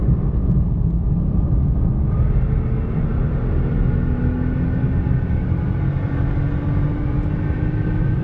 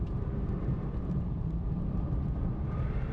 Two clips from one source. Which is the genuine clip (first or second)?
first